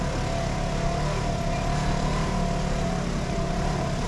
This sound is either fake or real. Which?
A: real